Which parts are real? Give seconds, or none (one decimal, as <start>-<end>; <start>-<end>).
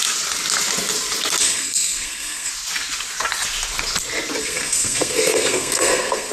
0.0-1.4; 2.5-4.4